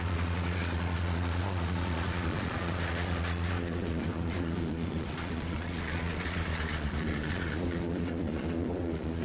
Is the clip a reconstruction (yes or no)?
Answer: yes